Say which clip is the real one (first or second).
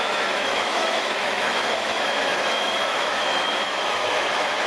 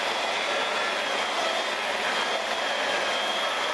second